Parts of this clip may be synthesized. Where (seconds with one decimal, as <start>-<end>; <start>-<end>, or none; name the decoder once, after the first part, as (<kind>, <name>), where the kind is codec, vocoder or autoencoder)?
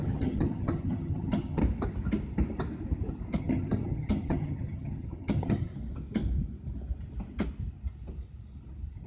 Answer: 0.0-1.6 (vocoder, HiFi-GAN); 3.4-5.7